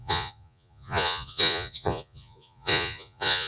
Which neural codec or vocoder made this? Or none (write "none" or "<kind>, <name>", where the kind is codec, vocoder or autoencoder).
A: vocoder, Vocos